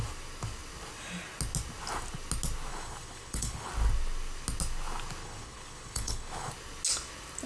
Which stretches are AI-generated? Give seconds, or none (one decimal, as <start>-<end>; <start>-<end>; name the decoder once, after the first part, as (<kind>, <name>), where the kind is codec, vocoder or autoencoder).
2.7-3.7 (codec, HILCodec); 5.2-6.5